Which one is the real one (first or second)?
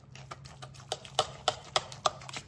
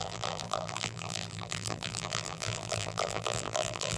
first